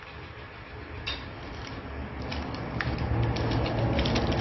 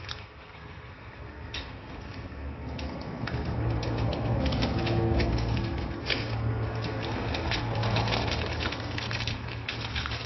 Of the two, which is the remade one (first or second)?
second